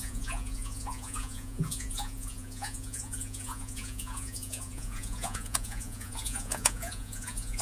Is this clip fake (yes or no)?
yes